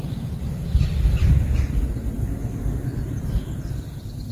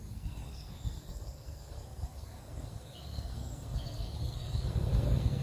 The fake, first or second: second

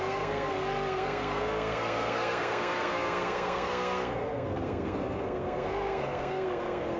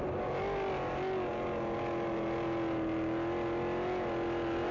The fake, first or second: first